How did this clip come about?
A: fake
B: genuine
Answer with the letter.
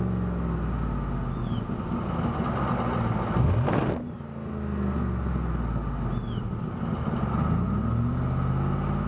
B